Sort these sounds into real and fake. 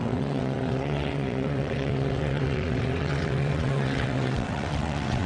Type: fake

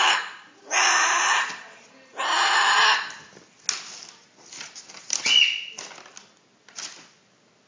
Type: real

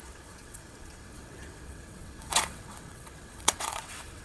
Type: fake